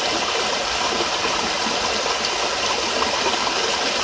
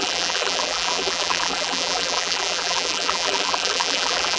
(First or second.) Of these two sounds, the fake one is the second